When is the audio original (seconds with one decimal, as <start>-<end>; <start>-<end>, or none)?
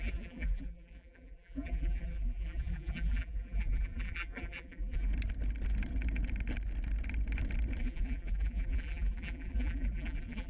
5.1-7.8